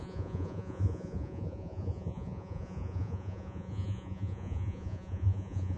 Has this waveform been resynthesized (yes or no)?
yes